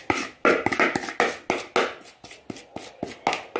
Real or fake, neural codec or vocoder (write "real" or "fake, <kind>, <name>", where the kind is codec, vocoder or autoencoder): real